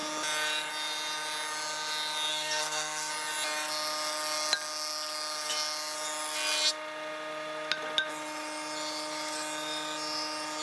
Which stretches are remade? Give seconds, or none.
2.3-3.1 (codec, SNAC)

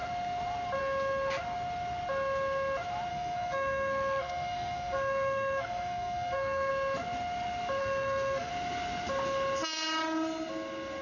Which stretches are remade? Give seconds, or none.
3.1-6.7 (codec, SNAC); 7.8-8.5

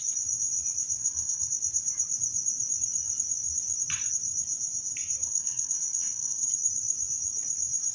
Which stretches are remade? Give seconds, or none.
1.0-1.5 (codec, SNAC); 5.2-6.5

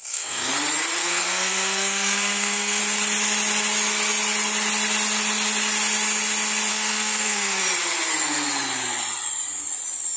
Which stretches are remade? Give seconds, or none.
0.0-0.5 (codec, SNAC); 1.0-2.8; 6.7-7.6